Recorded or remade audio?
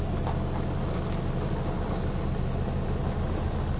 recorded